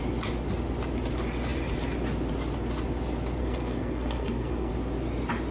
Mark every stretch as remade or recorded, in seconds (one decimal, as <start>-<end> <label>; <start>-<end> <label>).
0.0-3.4 recorded; 3.4-4.7 remade; 4.7-5.5 recorded